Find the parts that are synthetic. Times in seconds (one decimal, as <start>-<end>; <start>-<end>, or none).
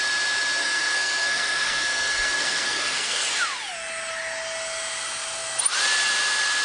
0.6-3.3